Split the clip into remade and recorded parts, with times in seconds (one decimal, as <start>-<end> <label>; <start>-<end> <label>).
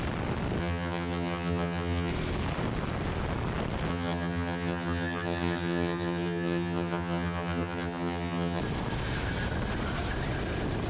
0.0-0.6 recorded; 0.6-2.1 remade; 2.1-3.9 recorded; 3.9-8.6 remade; 8.6-10.9 recorded